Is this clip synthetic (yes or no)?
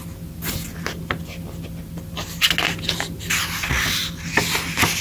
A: no